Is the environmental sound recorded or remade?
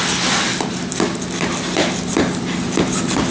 recorded